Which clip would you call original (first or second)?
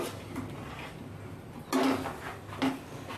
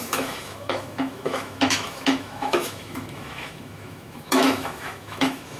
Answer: first